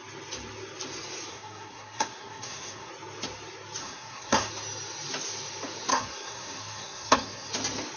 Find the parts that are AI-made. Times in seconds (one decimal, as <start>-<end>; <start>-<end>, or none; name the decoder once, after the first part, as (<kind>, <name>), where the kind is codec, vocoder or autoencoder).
1.3-2.9 (codec, SNAC); 3.8-4.5; 5.9-7.5